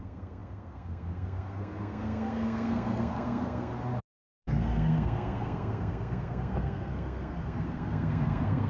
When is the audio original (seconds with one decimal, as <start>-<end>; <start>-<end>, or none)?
3.7-4.3